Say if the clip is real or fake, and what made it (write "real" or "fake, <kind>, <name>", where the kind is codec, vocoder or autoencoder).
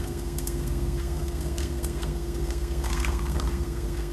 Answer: fake, codec, SNAC